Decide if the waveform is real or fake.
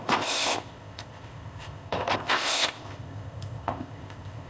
fake